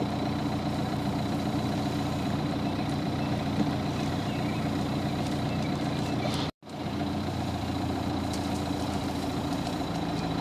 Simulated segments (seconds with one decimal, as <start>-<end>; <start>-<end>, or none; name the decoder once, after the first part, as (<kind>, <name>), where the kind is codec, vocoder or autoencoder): 0.0-3.4 (vocoder, BigVGAN v2); 4.1-10.4